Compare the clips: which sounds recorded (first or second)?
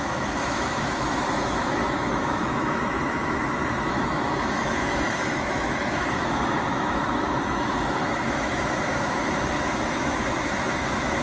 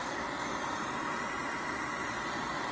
second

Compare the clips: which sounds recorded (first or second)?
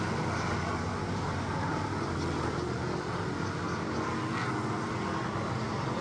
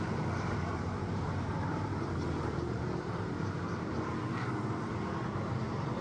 first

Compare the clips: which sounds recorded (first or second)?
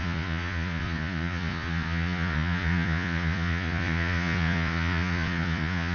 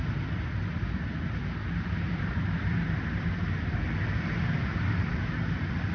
second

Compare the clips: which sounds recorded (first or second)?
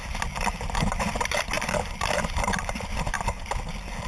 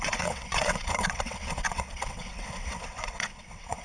first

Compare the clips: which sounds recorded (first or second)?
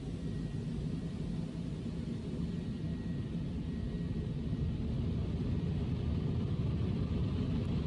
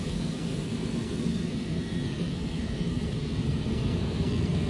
first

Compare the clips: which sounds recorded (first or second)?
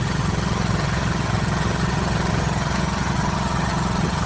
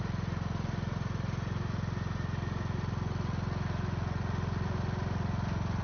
second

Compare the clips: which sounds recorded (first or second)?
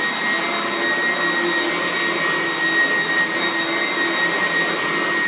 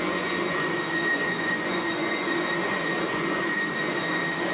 first